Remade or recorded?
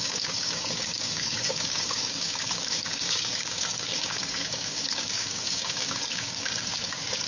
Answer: remade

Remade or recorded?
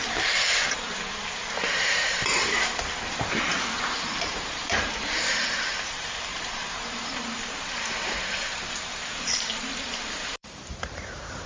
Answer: remade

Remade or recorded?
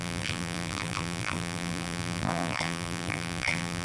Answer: remade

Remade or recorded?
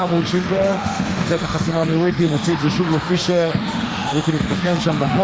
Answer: remade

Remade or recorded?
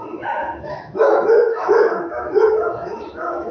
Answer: remade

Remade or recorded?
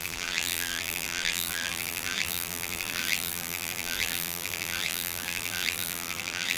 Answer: remade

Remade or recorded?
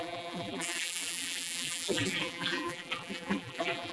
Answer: remade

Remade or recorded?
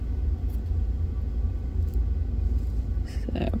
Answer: recorded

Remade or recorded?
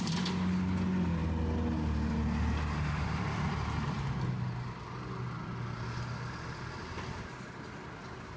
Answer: recorded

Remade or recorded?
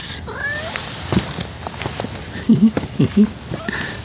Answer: recorded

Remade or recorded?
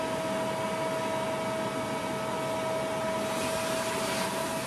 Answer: recorded